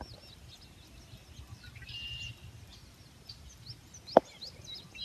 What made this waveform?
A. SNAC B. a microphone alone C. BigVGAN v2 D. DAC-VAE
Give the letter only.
B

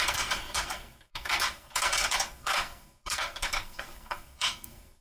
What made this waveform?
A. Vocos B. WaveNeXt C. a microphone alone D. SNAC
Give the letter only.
D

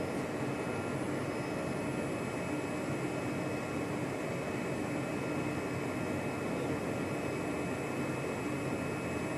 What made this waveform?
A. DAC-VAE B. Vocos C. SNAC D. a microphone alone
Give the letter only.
D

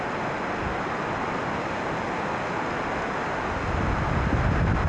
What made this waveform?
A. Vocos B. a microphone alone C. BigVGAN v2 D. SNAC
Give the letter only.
B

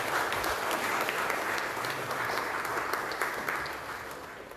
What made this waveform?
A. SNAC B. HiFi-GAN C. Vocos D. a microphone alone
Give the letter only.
D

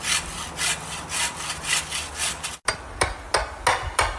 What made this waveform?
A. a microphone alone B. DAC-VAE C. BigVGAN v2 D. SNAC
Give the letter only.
A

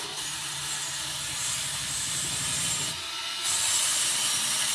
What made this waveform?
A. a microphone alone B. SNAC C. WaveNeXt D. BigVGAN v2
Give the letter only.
A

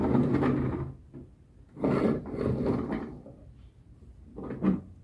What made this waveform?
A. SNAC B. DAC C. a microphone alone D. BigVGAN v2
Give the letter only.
C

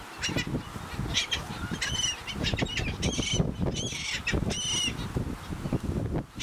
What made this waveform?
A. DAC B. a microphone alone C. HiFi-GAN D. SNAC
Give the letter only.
B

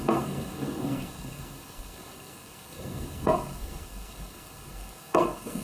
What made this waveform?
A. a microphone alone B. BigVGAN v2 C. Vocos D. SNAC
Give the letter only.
D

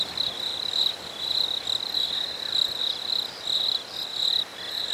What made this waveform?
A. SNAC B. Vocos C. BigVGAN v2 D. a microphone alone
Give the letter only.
D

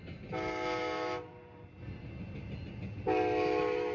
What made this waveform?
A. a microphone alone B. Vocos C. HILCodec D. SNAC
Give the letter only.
A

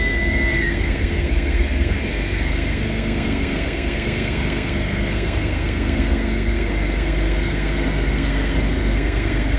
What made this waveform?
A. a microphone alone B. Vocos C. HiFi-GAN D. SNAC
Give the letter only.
D